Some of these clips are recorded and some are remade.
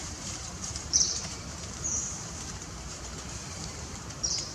remade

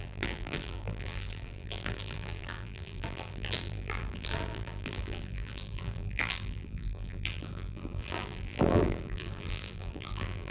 remade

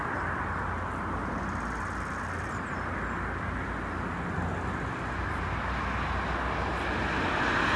recorded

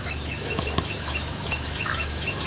remade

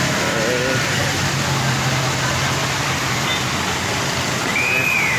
recorded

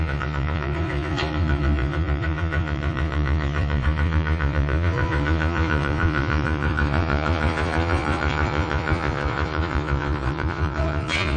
remade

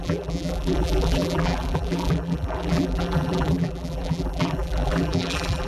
remade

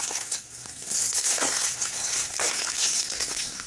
remade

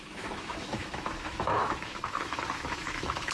remade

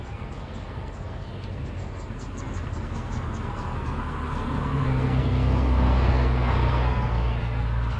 remade